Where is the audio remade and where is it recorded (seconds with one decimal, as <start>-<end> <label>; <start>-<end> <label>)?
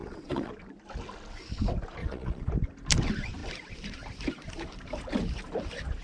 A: 0.0-0.5 remade; 0.5-2.0 recorded; 2.0-2.5 remade; 2.5-6.0 recorded